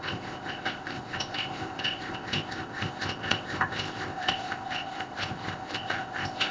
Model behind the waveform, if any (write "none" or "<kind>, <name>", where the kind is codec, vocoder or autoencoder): codec, ZipCodec